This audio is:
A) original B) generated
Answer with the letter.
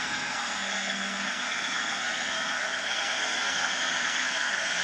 B